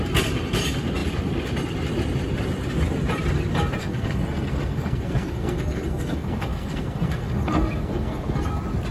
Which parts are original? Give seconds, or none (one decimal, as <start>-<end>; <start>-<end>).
0.0-3.8; 8.5-8.9